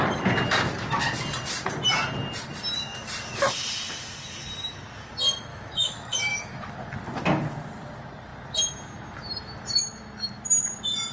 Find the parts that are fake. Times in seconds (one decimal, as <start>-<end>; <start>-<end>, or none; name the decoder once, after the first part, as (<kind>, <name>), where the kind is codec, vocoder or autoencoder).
5.5-6.7 (autoencoder, DAC-VAE)